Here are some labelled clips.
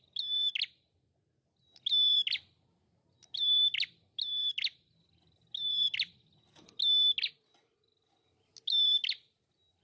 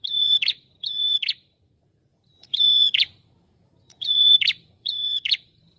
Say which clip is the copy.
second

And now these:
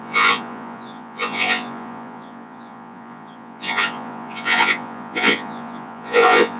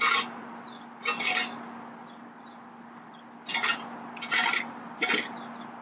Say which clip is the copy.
first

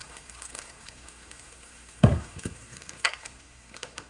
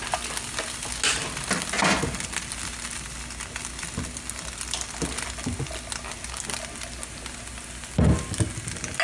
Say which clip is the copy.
first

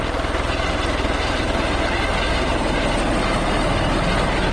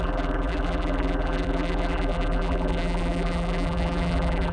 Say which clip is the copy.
second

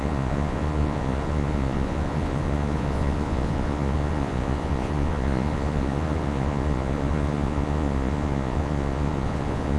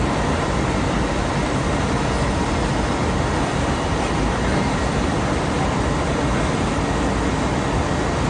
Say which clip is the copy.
first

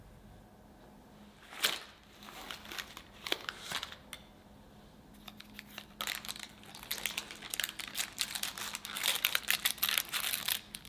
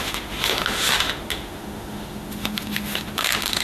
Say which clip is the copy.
second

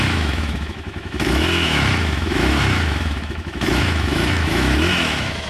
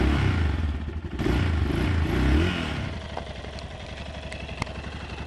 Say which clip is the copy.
first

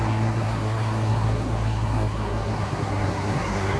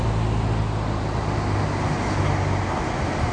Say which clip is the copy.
first